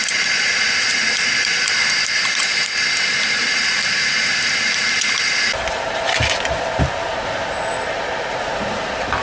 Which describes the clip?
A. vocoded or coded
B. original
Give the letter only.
B